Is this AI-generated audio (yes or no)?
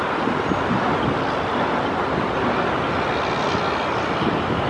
no